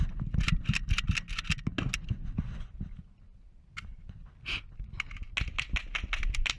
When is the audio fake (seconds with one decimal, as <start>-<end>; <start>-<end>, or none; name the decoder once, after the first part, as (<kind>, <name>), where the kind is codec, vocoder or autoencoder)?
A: none